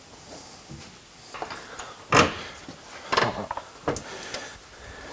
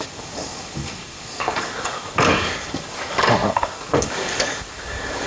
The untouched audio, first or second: first